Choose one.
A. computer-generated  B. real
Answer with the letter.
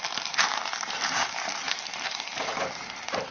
A